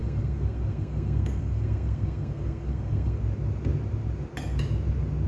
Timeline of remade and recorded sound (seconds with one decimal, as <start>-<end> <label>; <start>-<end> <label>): 0.0-3.2 remade; 3.2-5.3 recorded